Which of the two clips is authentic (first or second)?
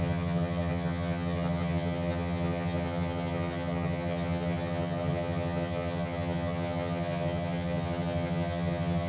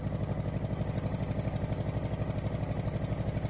second